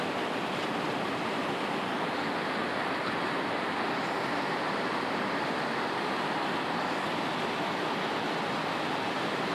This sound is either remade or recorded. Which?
remade